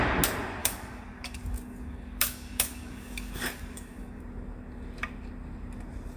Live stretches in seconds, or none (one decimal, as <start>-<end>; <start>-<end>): 0.0-0.6; 4.2-6.2